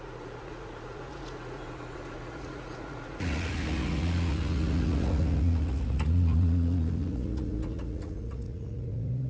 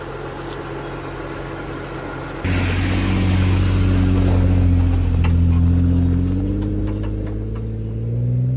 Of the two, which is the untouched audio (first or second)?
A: second